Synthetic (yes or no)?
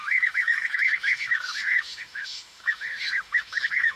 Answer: yes